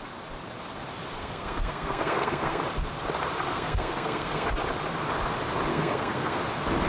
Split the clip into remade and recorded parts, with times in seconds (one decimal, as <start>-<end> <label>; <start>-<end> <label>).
0.0-1.2 recorded; 1.2-2.6 remade; 2.6-3.5 recorded; 3.5-4.5 remade; 4.5-5.7 recorded; 5.7-6.4 remade; 6.4-6.9 recorded